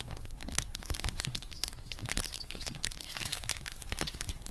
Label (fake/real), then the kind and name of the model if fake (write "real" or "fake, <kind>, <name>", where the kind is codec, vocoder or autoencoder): fake, codec, SNAC